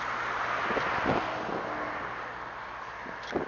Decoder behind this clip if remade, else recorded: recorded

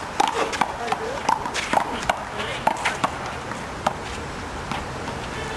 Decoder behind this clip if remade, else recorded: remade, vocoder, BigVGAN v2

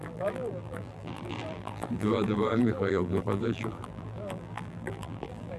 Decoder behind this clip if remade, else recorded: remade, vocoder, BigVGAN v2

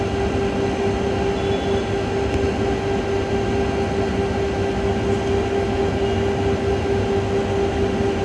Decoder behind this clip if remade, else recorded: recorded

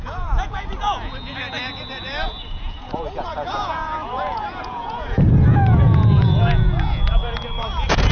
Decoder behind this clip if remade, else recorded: remade, vocoder, Vocos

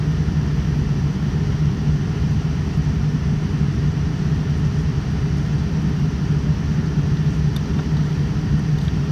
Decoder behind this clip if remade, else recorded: recorded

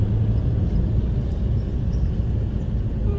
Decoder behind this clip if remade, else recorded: recorded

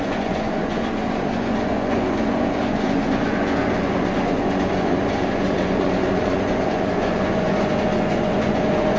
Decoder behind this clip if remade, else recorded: remade, vocoder, Vocos